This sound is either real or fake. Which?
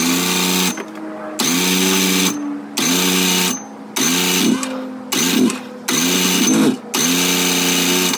real